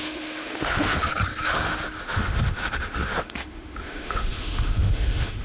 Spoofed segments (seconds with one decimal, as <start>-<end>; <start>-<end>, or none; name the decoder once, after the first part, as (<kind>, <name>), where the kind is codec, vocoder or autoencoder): 0.0-1.1 (autoencoder, DAC-VAE); 2.0-5.4